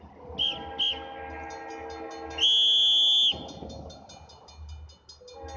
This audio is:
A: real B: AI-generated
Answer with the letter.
A